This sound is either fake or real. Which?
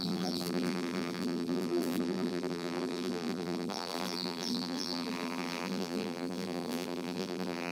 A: fake